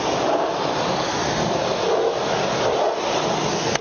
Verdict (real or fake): real